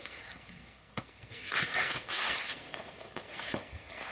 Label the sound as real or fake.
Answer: fake